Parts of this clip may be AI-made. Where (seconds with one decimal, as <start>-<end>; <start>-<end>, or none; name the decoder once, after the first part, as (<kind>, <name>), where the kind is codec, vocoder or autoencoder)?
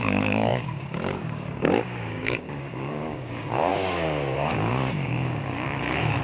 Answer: 0.0-6.2 (codec, DAC)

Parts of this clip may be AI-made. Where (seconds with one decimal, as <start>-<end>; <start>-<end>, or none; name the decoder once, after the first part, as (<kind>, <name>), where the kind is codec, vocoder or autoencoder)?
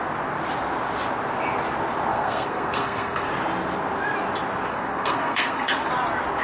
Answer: 2.1-3.3 (codec, SNAC); 4.7-5.9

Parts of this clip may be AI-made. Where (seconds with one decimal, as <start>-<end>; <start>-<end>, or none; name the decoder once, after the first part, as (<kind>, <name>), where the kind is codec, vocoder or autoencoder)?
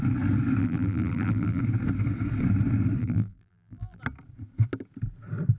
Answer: 0.6-1.6 (vocoder, BigVGAN v2); 3.0-4.0